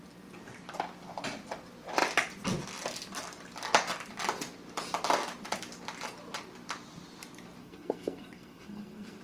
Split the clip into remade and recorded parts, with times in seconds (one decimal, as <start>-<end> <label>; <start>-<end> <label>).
0.0-7.6 recorded; 7.6-9.2 remade